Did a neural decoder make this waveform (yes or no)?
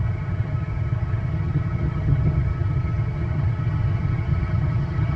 yes